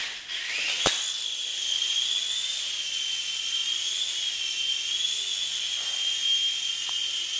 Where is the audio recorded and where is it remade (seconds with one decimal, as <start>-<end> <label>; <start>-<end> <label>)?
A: 0.0-7.4 recorded